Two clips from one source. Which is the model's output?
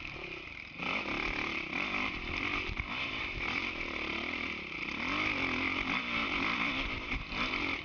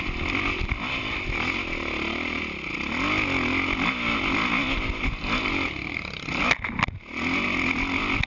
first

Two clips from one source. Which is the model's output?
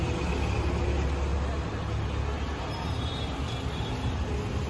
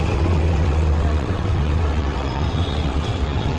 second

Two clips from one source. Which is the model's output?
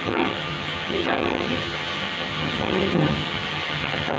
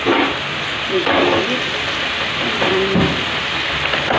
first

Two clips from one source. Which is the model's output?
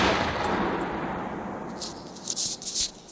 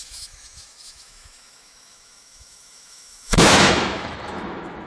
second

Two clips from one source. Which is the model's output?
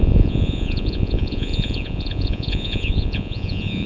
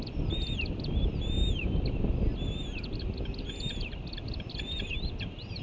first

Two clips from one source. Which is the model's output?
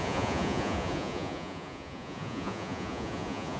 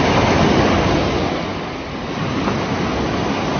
first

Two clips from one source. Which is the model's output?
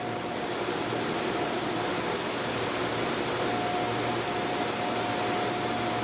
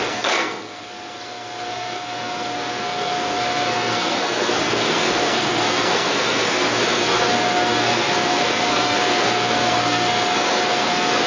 second